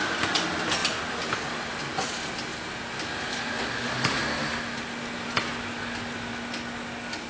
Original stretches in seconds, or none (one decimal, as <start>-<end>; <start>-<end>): 0.0-7.3